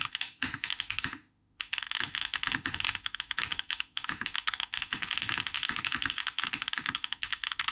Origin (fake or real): fake